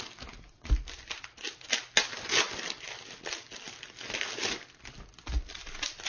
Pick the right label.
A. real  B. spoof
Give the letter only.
A